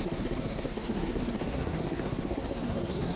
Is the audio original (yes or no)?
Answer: no